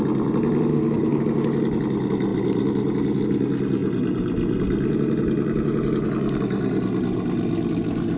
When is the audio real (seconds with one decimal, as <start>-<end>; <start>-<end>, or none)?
0.0-0.7; 1.2-8.2